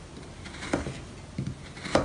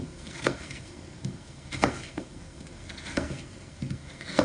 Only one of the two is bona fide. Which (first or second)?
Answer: first